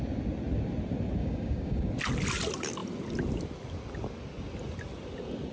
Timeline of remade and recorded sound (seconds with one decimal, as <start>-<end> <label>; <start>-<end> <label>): 0.0-1.2 recorded; 1.2-1.9 remade; 1.9-5.5 recorded